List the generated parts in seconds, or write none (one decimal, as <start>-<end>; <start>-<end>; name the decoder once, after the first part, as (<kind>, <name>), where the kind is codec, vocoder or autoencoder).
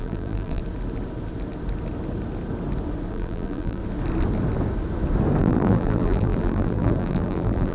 0.0-0.6 (vocoder, BigVGAN v2); 3.1-3.8; 5.4-7.7